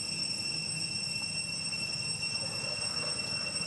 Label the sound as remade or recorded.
recorded